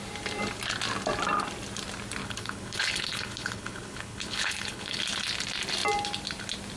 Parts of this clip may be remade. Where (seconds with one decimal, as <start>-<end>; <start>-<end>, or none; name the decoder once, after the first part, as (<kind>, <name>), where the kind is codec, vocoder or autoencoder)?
2.2-5.0 (codec, HILCodec)